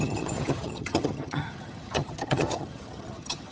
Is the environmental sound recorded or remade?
remade